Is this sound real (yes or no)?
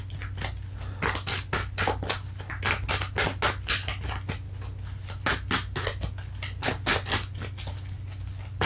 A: yes